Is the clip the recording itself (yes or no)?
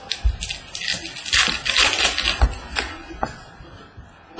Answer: yes